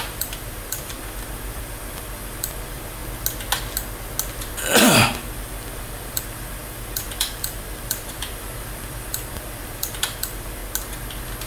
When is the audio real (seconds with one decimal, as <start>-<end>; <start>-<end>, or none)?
3.0-4.8; 10.6-11.5